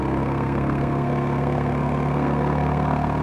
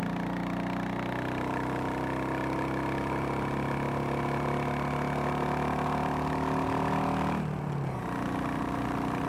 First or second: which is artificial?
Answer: first